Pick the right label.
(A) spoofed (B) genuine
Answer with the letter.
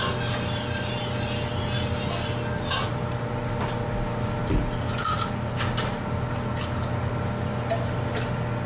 B